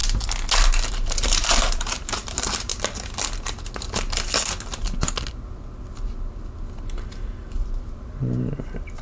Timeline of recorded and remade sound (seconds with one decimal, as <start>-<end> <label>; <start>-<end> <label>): 0.0-0.9 recorded; 0.9-2.7 remade; 2.7-7.1 recorded; 7.1-9.0 remade